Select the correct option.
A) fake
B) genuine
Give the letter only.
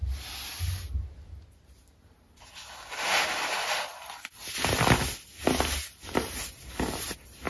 B